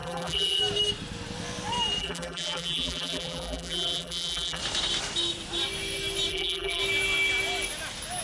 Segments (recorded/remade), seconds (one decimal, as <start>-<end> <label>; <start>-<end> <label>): 0.0-0.6 remade; 0.6-2.0 recorded; 2.0-4.6 remade; 4.6-6.3 recorded; 6.3-6.8 remade; 6.8-8.2 recorded